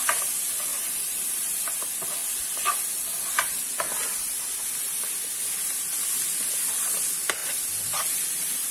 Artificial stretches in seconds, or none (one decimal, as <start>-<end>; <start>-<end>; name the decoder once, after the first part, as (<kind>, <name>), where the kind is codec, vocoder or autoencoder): 0.7-1.8 (vocoder, BigVGAN v2); 7.4-8.7